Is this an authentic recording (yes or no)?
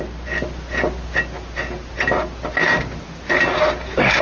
yes